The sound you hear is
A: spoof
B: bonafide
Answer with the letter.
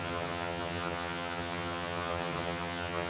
A